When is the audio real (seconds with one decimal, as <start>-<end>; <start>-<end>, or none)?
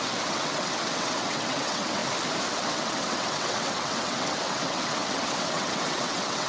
2.0-2.5